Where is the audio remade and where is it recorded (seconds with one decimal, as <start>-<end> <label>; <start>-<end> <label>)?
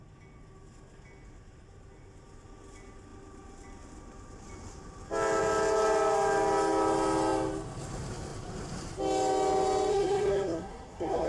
0.0-9.9 recorded; 9.9-11.3 remade